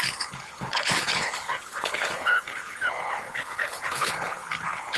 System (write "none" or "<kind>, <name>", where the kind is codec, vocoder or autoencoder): codec, HILCodec